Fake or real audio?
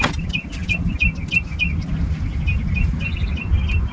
real